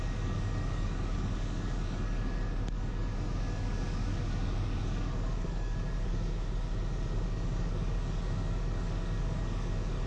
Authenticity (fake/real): fake